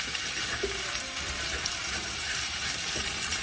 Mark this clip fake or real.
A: fake